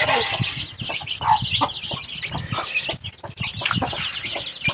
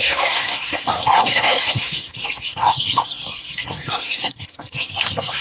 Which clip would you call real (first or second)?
first